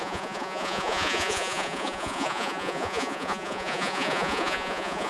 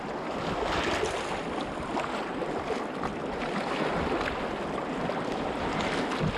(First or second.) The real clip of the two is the second